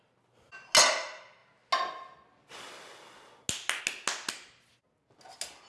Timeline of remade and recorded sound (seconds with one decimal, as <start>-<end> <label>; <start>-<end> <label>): 0.0-5.7 recorded